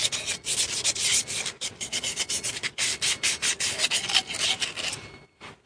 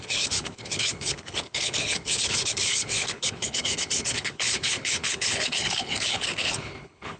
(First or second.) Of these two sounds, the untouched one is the first